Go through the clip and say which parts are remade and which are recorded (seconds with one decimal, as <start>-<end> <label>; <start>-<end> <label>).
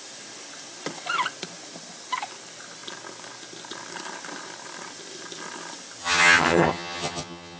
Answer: 0.0-6.0 recorded; 6.0-7.6 remade